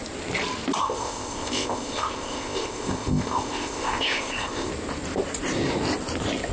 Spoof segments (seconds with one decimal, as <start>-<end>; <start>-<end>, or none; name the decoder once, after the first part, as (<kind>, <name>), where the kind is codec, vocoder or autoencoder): 0.8-4.7 (codec, ZipCodec)